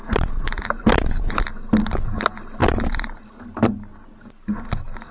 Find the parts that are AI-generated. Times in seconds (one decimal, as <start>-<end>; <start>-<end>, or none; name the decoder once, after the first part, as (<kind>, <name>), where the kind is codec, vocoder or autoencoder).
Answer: 0.0-1.4 (vocoder, BigVGAN v2); 2.6-3.3